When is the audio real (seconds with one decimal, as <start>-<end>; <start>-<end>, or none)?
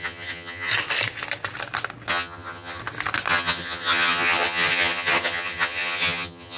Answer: 0.7-2.1; 2.8-3.3